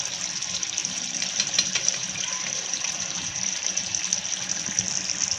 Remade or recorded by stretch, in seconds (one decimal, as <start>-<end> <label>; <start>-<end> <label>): 0.0-0.8 recorded; 0.8-4.0 remade; 4.0-5.4 recorded